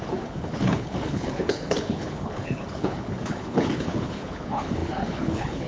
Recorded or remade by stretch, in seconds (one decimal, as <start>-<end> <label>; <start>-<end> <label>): 0.0-5.7 remade